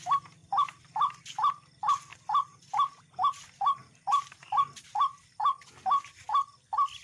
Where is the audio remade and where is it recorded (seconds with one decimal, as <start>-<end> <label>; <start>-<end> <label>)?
0.0-0.4 recorded; 0.4-1.2 remade; 1.2-3.8 recorded; 3.8-4.6 remade; 4.6-7.0 recorded